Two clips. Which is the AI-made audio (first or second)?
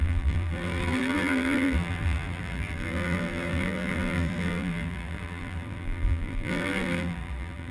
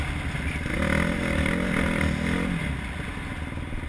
first